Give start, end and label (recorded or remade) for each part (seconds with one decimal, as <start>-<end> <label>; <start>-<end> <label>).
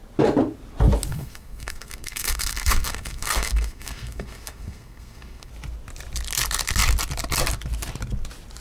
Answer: 0.0-1.1 recorded; 1.1-5.5 remade; 5.5-8.6 recorded